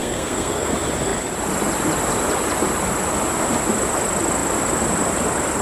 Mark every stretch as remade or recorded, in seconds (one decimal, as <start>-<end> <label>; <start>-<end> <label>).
0.0-0.7 remade; 0.7-5.6 recorded